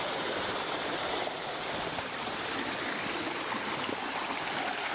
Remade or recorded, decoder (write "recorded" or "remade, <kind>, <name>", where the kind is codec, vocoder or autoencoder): recorded